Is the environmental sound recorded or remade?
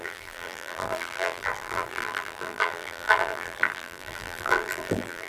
remade